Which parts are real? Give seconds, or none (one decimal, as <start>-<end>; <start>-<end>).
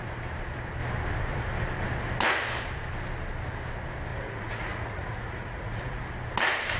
0.0-4.1; 6.0-6.8